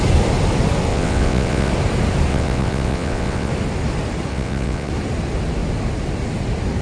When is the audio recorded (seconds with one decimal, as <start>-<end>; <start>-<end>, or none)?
0.0-0.9; 1.7-2.3; 3.5-4.3; 4.9-6.8